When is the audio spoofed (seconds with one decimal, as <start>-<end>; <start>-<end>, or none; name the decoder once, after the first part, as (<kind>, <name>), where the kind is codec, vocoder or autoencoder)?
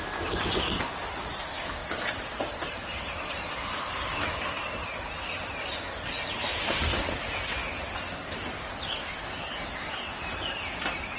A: none